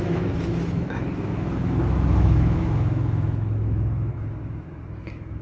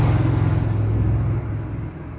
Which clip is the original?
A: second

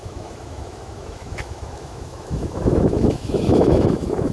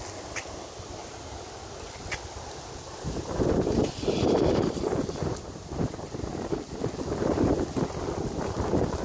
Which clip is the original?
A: second